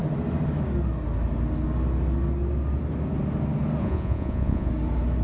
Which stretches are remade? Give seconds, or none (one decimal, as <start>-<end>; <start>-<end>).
3.8-4.7